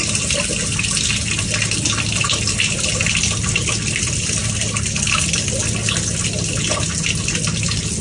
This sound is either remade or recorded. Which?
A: recorded